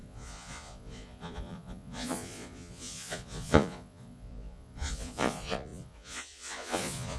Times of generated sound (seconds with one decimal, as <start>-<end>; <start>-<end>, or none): 0.0-7.2